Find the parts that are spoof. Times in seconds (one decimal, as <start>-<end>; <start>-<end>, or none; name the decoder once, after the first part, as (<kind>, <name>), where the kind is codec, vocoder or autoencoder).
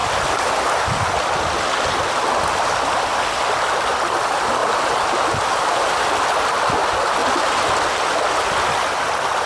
4.6-5.1 (vocoder, BigVGAN v2)